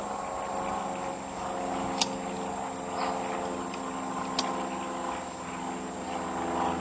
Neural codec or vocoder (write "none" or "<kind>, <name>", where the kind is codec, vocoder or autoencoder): none